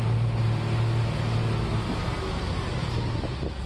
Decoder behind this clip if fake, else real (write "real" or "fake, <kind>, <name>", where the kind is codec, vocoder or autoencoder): real